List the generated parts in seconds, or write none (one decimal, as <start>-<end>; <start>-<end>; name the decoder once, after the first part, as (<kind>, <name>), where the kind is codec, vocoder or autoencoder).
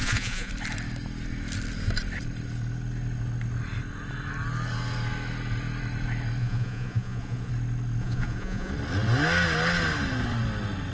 0.0-0.5 (vocoder, Vocos); 6.4-7.5; 8.0-8.7